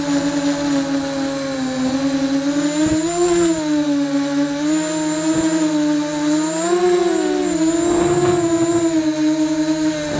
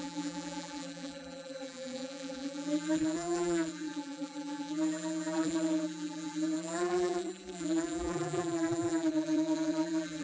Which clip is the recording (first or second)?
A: first